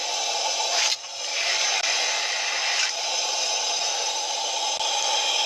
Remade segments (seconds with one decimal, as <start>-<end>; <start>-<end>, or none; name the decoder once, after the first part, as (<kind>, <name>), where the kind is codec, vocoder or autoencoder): 1.3-1.9 (codec, DAC)